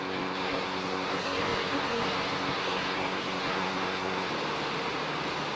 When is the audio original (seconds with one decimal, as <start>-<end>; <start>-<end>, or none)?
4.3-5.6